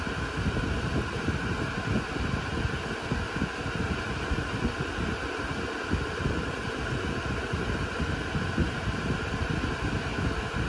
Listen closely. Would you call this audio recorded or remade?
recorded